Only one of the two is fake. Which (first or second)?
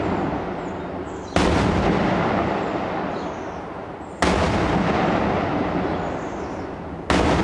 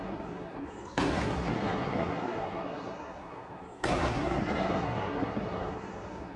second